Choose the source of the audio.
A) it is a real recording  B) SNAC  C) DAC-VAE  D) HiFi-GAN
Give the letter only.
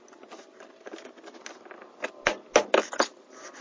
A